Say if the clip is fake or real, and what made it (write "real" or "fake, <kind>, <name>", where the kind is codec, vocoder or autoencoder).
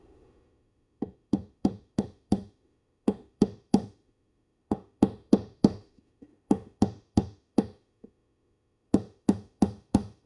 fake, autoencoder, DAC-VAE